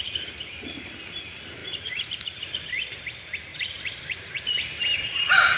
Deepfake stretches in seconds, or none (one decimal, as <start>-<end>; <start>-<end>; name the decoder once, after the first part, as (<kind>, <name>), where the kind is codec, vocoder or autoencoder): 1.6-3.0 (vocoder, BigVGAN v2); 3.5-4.5